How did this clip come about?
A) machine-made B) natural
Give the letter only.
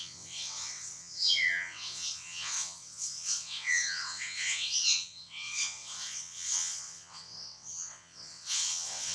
A